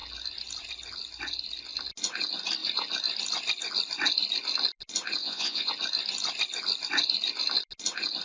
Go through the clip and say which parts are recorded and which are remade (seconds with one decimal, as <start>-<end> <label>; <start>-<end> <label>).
0.0-5.2 recorded; 5.2-5.7 remade; 5.7-8.2 recorded